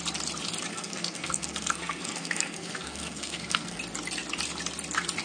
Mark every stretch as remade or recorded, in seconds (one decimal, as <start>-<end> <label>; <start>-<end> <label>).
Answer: 0.0-0.7 recorded; 0.7-3.8 remade; 3.8-5.2 recorded